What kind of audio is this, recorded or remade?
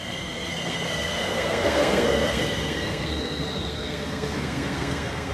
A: remade